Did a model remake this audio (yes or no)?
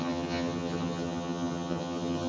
yes